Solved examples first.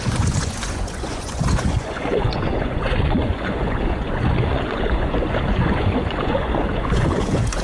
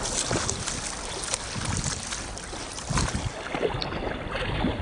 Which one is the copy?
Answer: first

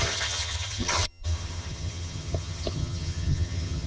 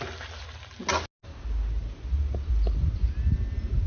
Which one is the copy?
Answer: first